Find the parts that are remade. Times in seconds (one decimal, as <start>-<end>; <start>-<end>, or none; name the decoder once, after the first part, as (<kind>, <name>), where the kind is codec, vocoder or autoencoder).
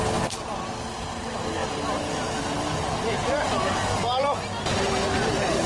none